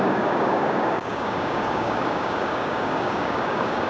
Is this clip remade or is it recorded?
remade